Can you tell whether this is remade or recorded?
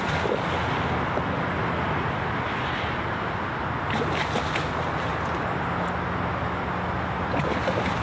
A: recorded